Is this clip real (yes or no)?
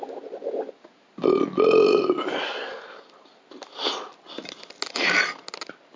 yes